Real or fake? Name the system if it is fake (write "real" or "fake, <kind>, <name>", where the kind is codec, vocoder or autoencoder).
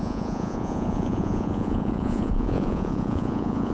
fake, vocoder, Vocos